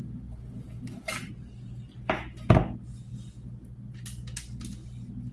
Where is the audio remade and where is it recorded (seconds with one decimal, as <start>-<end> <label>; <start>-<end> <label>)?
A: 0.0-5.3 recorded